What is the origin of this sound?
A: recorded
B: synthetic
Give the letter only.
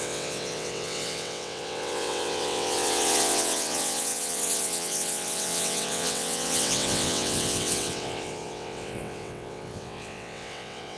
B